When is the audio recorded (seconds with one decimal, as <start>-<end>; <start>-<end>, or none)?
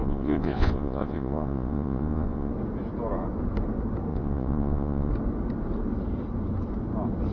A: 2.5-4.1; 5.1-7.3